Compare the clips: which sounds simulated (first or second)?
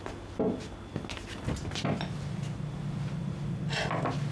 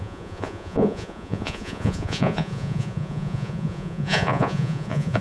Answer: second